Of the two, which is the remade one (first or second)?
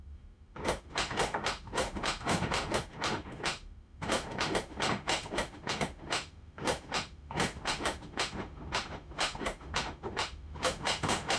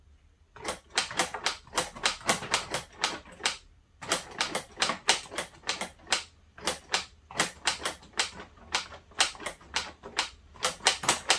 first